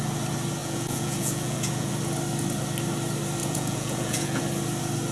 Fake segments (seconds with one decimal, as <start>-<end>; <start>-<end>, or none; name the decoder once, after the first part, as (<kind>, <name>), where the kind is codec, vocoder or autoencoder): 0.6-1.9 (vocoder, Vocos); 3.4-4.4